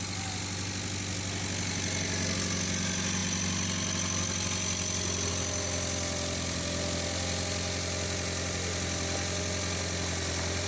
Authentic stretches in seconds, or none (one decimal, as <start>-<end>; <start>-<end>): 0.0-10.7